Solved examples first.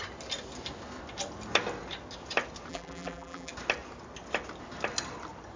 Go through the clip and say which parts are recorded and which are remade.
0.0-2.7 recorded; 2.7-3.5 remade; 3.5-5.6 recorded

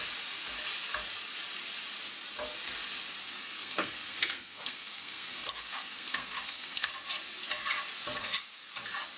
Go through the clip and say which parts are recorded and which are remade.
0.0-3.2 recorded; 3.2-6.9 remade; 6.9-8.2 recorded; 8.2-8.7 remade; 8.7-9.2 recorded

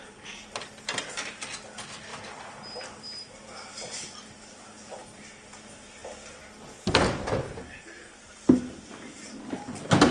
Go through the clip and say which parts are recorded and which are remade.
0.0-2.1 recorded; 2.1-3.3 remade; 3.3-10.1 recorded

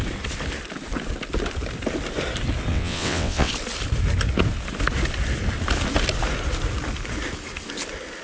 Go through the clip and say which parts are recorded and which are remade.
0.0-2.7 recorded; 2.7-3.5 remade; 3.5-8.2 recorded

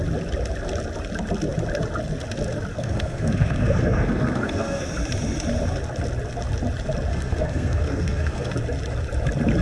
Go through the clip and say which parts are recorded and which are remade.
0.0-2.7 recorded; 2.7-4.9 remade; 4.9-7.1 recorded; 7.1-8.5 remade; 8.5-9.6 recorded

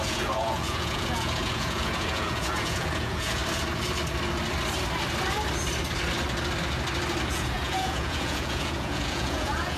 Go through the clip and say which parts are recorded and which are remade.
0.0-3.4 remade; 3.4-7.3 recorded; 7.3-9.8 remade

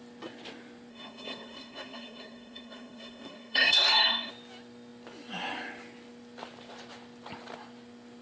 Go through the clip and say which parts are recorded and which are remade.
0.0-0.9 recorded; 0.9-4.3 remade; 4.3-8.2 recorded